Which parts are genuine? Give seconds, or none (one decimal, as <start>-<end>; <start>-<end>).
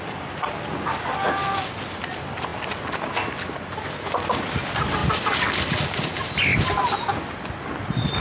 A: 0.0-8.2